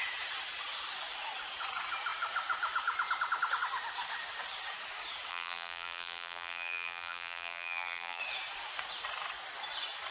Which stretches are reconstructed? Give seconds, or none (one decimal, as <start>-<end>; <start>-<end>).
5.3-8.2

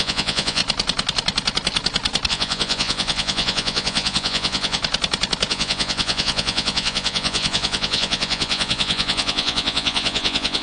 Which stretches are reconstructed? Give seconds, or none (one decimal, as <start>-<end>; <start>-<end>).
0.0-0.6; 2.3-4.8; 5.5-10.6

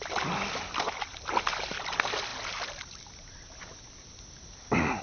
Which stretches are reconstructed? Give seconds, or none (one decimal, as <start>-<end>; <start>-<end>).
none

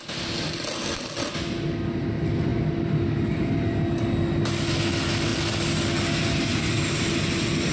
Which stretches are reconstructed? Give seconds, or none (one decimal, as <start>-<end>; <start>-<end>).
none